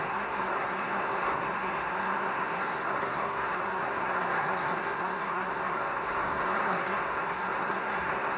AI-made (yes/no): yes